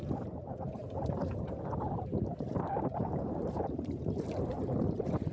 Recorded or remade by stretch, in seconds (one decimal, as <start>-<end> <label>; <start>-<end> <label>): 0.0-1.7 remade; 1.7-2.7 recorded; 2.7-5.3 remade